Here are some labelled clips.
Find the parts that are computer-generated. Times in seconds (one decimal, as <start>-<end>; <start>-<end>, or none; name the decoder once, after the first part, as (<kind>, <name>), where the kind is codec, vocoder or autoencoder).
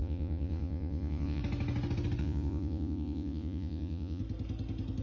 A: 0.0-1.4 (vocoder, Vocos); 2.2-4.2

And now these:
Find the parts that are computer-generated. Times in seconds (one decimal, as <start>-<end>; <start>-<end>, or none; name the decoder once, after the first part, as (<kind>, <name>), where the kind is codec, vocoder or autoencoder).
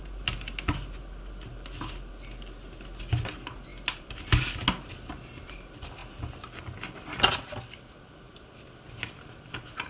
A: none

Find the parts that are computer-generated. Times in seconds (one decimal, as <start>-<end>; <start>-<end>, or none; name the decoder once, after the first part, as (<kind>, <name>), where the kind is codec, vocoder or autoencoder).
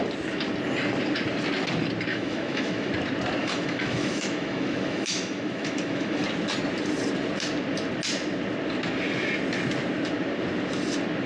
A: 2.1-2.9 (autoencoder, DAC-VAE); 3.4-6.2